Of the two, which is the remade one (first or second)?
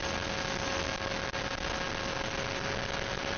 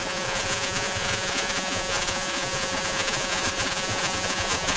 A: second